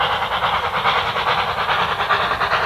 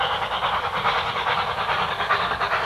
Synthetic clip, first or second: second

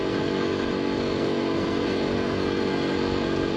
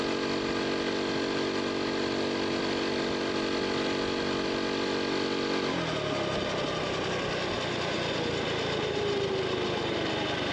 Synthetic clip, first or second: first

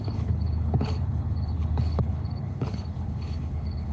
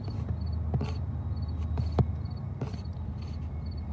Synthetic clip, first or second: first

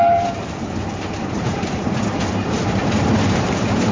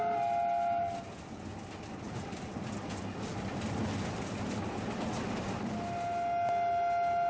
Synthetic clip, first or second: first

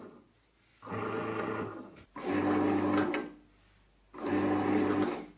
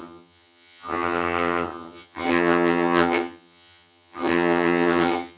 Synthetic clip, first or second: second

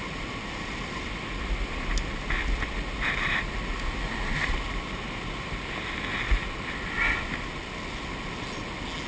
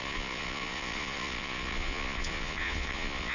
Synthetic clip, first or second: second